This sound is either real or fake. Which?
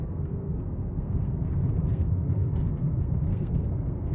fake